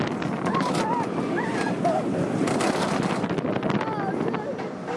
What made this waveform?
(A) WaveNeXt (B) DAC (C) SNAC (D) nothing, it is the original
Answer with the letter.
D